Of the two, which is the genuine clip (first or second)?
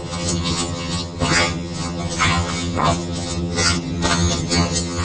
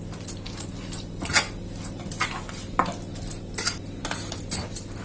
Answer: second